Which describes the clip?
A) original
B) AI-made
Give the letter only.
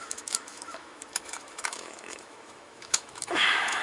B